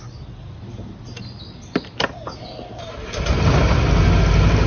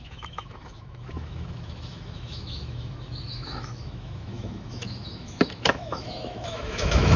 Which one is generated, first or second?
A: second